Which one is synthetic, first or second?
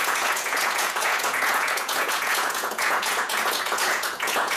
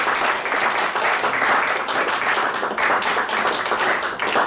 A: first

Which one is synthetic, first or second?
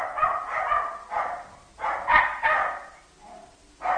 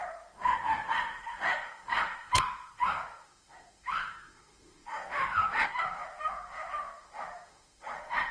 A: second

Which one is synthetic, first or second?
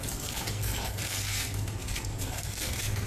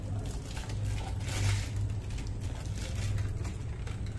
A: first